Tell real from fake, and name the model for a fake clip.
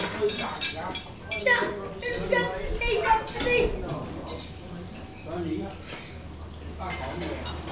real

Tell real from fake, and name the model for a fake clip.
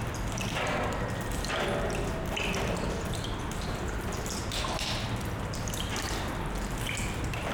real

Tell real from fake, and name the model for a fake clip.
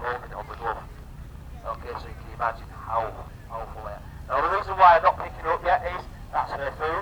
real